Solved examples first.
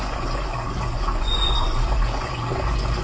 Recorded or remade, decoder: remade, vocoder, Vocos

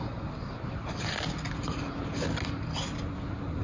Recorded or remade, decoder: recorded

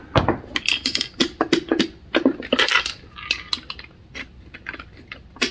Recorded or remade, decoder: recorded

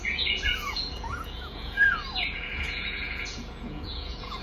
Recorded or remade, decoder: remade, vocoder, Vocos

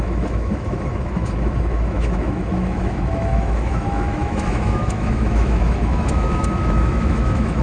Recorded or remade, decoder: remade, autoencoder, DAC-VAE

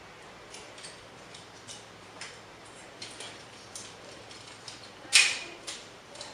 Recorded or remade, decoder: remade, vocoder, BigVGAN v2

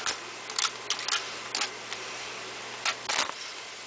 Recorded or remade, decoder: recorded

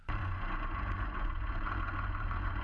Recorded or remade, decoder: remade, vocoder, Vocos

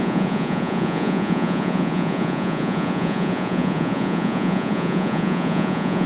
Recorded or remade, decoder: remade, vocoder, Vocos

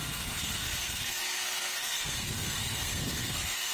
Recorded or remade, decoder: remade, codec, SNAC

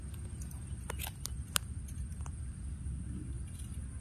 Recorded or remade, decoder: recorded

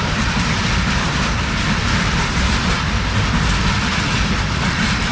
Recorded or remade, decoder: remade, vocoder, BigVGAN v2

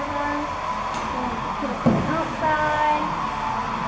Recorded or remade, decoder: recorded